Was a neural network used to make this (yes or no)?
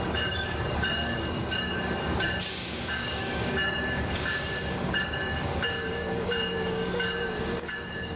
yes